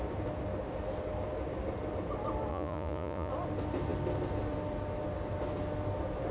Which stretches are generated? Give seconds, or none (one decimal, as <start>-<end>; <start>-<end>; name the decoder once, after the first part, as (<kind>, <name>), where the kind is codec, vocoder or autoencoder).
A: 2.5-3.3 (vocoder, Vocos)